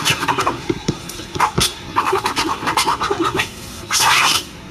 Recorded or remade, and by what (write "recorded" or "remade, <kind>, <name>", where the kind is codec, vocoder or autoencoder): remade, codec, SNAC